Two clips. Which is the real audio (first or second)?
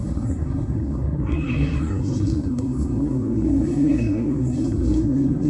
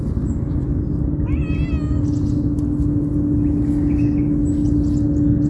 second